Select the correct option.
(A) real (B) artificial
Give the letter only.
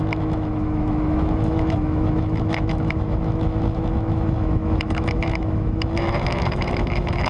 B